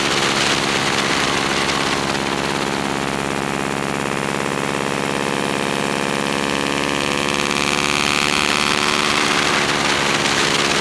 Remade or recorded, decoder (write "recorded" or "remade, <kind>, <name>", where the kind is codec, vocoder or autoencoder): recorded